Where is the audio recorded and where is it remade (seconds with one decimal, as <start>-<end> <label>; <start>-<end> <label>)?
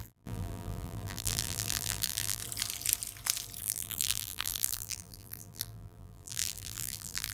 0.0-2.4 remade; 2.4-3.6 recorded; 3.6-7.3 remade